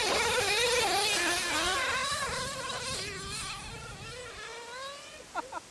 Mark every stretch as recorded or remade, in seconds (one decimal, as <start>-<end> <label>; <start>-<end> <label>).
0.0-2.0 recorded; 2.0-2.8 remade; 2.8-4.5 recorded; 4.5-5.2 remade; 5.2-5.7 recorded